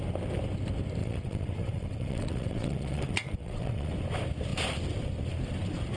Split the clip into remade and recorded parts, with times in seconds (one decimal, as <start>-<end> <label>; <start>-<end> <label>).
0.0-1.0 recorded; 1.0-3.9 remade; 3.9-6.0 recorded